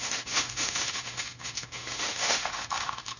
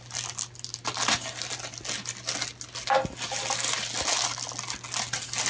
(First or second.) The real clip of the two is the second